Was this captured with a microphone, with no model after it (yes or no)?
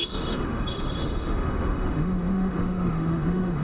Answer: no